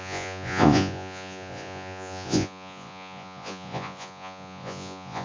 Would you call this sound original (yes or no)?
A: no